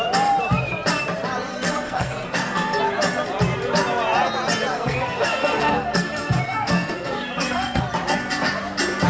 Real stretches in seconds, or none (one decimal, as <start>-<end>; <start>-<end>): 0.0-1.5; 2.8-4.7; 7.8-9.1

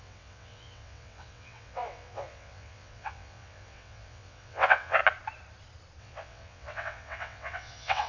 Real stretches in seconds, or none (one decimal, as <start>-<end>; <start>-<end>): 5.0-6.0